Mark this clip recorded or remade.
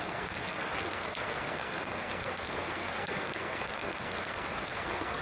remade